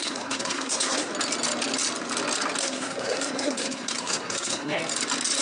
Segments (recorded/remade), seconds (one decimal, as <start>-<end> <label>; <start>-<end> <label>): 0.0-1.1 remade; 1.1-2.6 recorded; 2.6-4.8 remade; 4.8-5.4 recorded